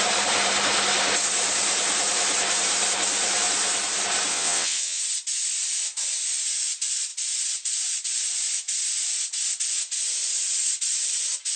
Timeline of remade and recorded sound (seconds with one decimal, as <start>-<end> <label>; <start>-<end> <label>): 0.0-4.3 recorded; 4.3-5.0 remade; 5.0-11.6 recorded